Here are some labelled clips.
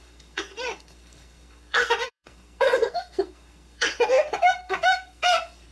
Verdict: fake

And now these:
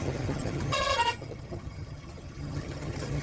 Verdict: fake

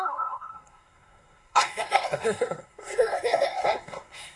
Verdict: fake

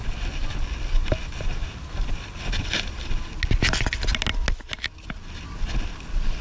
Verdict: real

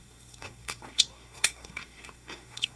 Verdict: fake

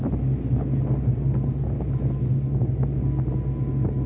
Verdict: real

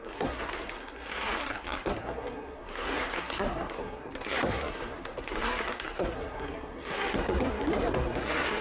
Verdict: fake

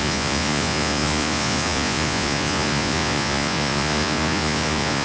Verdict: fake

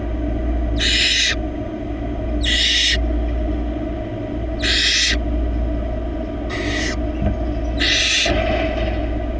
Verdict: real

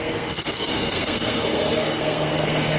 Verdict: fake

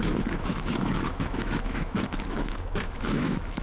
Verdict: fake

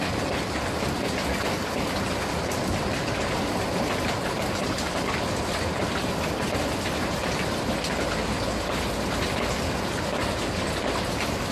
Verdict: real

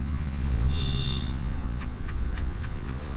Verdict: fake